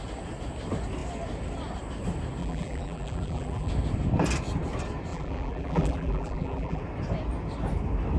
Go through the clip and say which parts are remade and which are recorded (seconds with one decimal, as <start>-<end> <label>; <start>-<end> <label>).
0.0-2.4 recorded; 2.4-3.7 remade; 3.7-5.1 recorded; 5.1-6.8 remade; 6.8-8.2 recorded